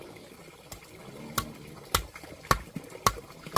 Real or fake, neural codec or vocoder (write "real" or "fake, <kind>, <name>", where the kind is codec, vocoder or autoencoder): real